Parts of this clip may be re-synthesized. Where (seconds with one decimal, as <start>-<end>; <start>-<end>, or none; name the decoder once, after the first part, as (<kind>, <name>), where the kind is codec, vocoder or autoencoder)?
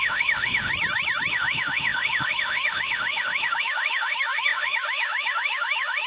0.0-0.7 (autoencoder, DAC-VAE); 1.3-6.1